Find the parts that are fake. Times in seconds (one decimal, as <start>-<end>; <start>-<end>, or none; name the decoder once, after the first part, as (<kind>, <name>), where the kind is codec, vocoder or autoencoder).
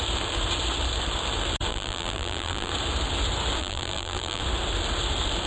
1.7-2.7 (vocoder, BigVGAN v2); 3.6-4.4